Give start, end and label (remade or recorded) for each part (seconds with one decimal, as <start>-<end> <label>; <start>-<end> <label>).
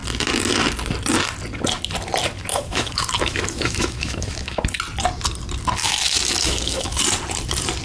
0.0-2.5 recorded; 2.5-4.8 remade; 4.8-5.8 recorded; 5.8-7.0 remade; 7.0-7.8 recorded